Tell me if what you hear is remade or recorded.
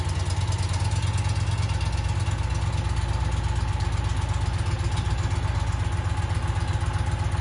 recorded